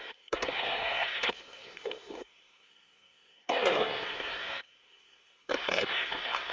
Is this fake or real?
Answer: fake